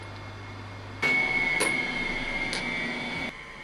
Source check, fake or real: real